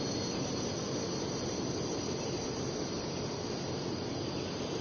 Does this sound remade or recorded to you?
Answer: recorded